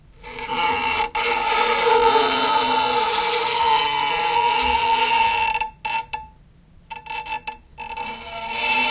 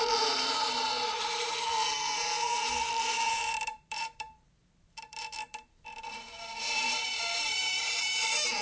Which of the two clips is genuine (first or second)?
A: first